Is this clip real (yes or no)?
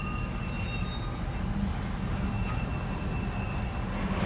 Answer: yes